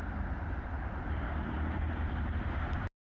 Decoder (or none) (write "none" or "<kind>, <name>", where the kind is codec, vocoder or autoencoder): none